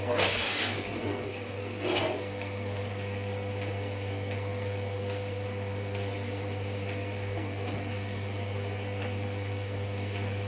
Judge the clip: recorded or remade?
remade